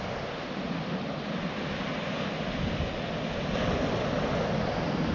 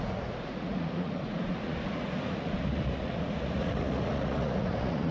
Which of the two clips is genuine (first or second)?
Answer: first